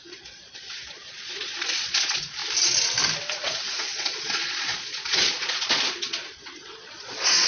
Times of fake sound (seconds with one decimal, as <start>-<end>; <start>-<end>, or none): 0.0-2.4; 3.3-7.5